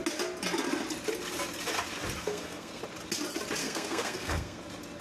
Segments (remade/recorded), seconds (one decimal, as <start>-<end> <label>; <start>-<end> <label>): 0.0-2.2 recorded; 2.2-2.8 remade; 2.8-3.6 recorded; 3.6-4.6 remade; 4.6-5.0 recorded